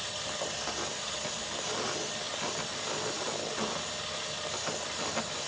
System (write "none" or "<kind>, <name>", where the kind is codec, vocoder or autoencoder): none